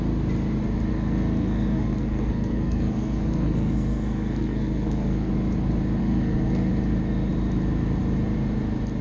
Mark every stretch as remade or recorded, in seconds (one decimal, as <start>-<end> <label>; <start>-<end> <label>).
0.0-0.9 recorded; 0.9-5.3 remade; 5.3-6.0 recorded; 6.0-6.7 remade; 6.7-9.0 recorded